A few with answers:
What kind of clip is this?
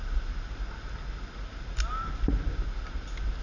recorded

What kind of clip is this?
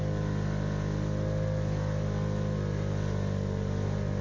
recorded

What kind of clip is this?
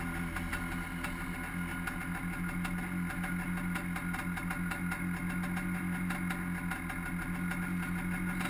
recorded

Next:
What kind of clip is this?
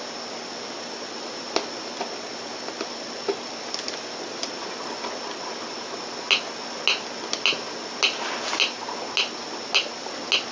recorded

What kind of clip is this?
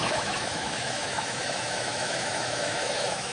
remade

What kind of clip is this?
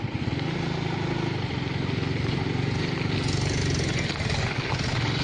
recorded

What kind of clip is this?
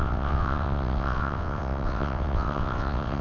remade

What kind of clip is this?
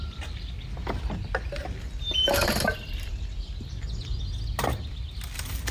recorded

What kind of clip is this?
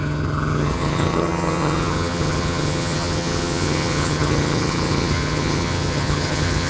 remade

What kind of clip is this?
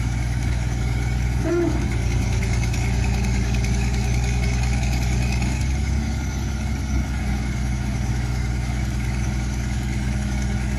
remade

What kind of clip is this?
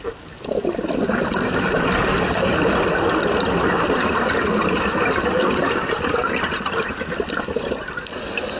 recorded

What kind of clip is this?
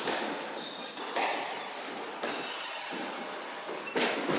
recorded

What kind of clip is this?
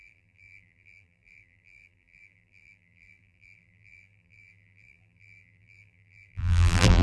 remade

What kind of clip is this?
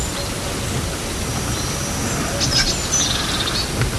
recorded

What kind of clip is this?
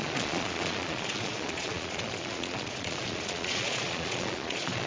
remade